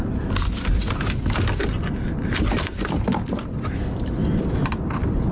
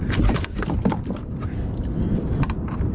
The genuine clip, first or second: first